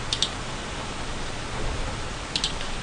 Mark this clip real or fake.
real